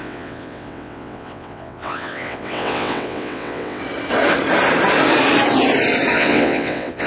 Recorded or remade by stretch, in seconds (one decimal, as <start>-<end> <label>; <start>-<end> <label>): 0.0-3.8 remade; 3.8-6.1 recorded; 6.1-7.1 remade